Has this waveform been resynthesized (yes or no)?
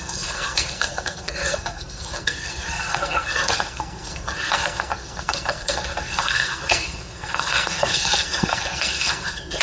yes